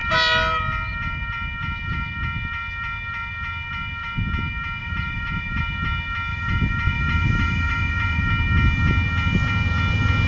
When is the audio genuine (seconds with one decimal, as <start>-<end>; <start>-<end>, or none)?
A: 0.0-4.8; 5.6-6.3; 8.3-10.3